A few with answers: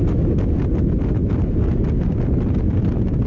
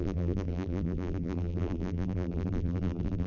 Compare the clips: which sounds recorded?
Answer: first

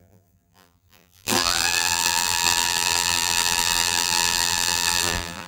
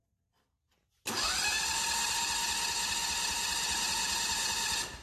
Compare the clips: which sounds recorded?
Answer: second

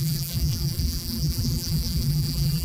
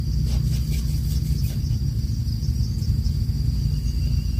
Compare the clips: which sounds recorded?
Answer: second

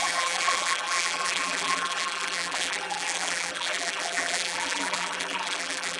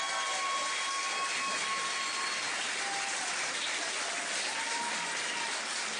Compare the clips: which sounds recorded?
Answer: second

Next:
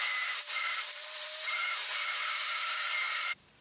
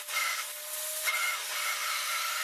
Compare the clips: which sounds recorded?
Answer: second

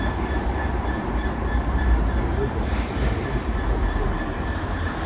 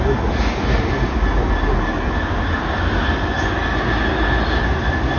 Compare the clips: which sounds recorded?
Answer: second